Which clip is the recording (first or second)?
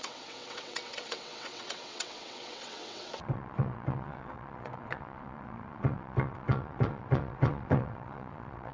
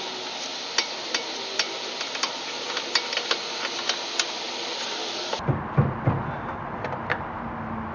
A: second